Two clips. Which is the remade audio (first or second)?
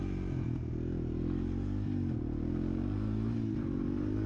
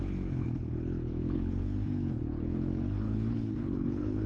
second